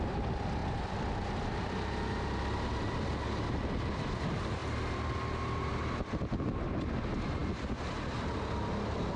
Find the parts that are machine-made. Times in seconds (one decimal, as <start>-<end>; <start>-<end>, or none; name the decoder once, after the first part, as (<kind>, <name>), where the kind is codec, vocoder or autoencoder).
none